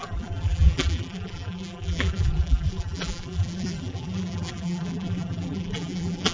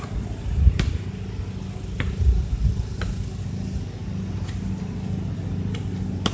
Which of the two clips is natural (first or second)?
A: second